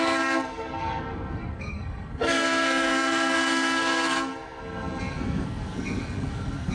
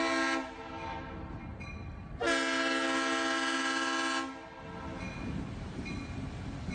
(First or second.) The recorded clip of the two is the second